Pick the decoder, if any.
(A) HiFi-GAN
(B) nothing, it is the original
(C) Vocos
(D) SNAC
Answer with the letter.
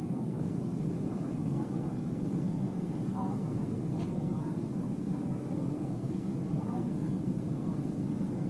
D